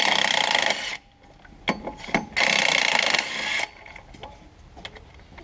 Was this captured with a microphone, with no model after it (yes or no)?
yes